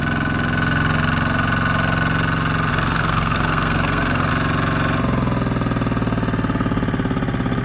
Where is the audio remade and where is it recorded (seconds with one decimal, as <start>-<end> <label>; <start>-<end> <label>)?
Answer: 0.0-2.7 recorded; 2.7-4.3 remade; 4.3-7.6 recorded